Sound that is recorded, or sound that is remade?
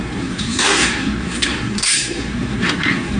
remade